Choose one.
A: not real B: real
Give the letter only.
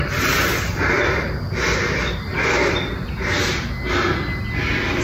B